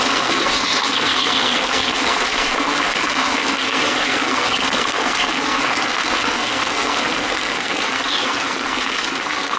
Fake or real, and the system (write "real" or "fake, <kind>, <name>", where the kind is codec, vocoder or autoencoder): fake, codec, SNAC